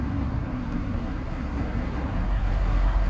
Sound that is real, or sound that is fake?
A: fake